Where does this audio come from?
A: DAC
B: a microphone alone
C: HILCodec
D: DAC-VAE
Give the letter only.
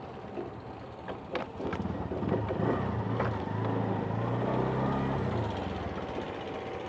B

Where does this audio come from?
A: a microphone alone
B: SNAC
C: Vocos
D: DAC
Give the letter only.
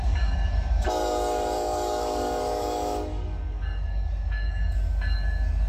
D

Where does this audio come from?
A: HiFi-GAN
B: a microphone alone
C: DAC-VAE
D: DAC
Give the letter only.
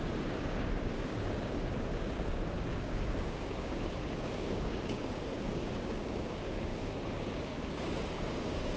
D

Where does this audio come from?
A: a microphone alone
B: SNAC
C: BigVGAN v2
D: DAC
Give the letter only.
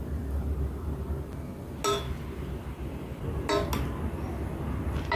A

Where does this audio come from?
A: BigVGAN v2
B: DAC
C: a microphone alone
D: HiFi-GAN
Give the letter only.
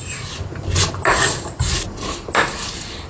C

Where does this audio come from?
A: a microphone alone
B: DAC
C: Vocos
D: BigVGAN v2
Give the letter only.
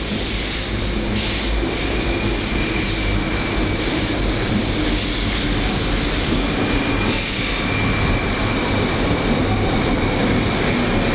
A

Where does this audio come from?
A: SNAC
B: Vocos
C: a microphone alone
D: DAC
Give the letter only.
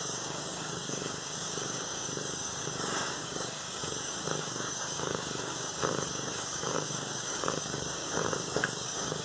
D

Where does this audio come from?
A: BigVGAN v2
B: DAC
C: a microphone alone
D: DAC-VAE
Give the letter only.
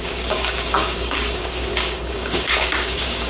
B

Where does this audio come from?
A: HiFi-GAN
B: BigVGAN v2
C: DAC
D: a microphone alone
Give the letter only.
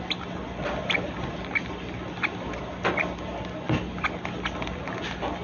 D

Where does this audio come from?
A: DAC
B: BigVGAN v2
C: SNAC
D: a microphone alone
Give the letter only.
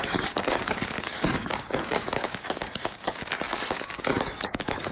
A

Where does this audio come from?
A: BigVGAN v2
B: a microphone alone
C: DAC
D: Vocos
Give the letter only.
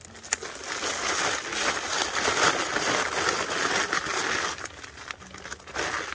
B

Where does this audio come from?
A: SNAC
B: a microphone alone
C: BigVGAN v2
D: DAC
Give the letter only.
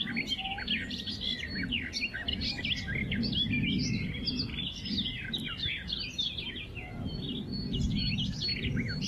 B